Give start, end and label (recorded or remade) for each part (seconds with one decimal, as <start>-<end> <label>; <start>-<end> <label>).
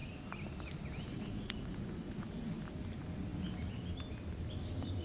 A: 0.0-1.1 recorded; 1.1-2.6 remade; 2.6-5.0 recorded